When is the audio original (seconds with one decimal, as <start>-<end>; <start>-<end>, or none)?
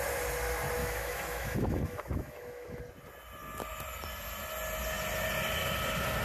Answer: 0.0-0.8; 2.8-6.2